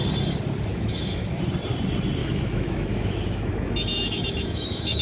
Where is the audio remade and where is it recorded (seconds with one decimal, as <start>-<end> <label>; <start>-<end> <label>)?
0.0-0.7 recorded; 0.7-1.4 remade; 1.4-2.2 recorded; 2.2-5.0 remade